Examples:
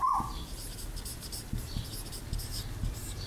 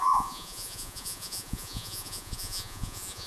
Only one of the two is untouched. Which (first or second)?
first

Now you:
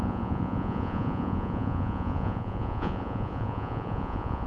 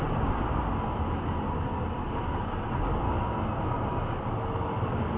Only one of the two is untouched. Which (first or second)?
second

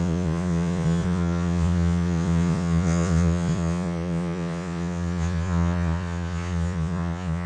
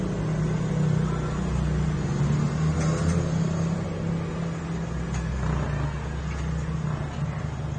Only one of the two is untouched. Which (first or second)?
second